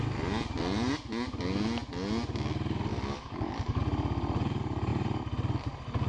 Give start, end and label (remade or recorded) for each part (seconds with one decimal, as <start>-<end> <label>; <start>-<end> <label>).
0.0-2.9 recorded; 2.9-3.8 remade; 3.8-6.1 recorded